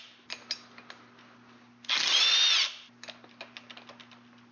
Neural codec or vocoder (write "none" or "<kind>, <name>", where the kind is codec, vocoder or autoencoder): none